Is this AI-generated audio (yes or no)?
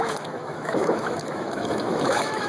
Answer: yes